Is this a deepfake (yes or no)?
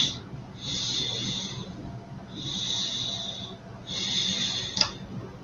no